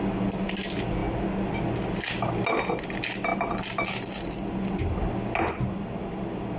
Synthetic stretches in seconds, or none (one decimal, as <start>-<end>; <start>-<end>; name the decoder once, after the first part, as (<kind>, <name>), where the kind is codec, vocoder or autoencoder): none